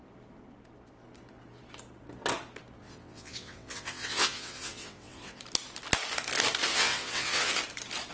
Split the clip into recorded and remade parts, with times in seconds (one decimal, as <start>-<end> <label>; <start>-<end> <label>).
0.0-2.8 recorded; 2.8-5.4 remade; 5.4-6.7 recorded; 6.7-7.5 remade; 7.5-8.1 recorded